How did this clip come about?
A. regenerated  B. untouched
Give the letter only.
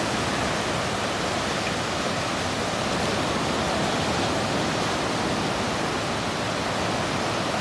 B